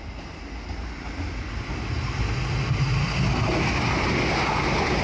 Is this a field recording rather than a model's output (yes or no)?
yes